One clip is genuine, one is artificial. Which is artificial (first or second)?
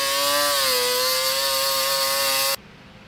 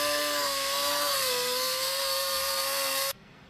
second